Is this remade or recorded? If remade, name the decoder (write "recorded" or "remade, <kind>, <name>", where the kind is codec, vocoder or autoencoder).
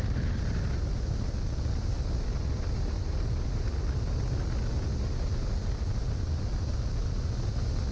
recorded